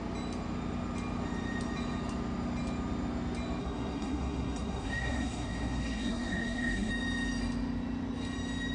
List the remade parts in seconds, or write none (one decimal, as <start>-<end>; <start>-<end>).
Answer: 3.6-6.9

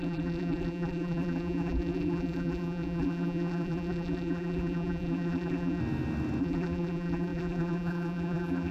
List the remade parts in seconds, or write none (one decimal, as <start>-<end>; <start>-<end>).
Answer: 0.0-5.8; 6.4-8.7

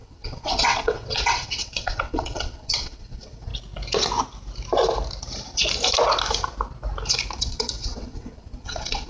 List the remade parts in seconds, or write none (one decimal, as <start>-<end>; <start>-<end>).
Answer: 0.0-3.5; 7.4-9.1

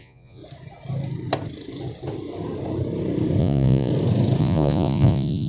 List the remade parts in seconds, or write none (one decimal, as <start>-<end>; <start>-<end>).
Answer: 0.0-0.4; 3.4-3.9; 4.4-5.5

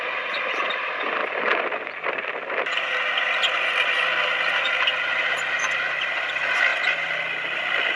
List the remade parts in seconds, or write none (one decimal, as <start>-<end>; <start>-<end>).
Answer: 4.9-6.3

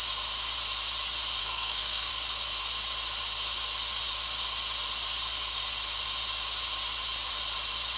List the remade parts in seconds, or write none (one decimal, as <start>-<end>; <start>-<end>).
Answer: 1.4-2.1

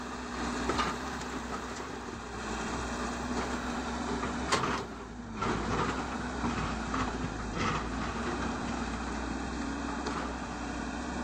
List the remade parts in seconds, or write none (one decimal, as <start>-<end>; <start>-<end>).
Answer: 0.0-11.2

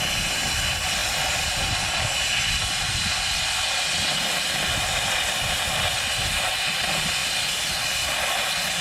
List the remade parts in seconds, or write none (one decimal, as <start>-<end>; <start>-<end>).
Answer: none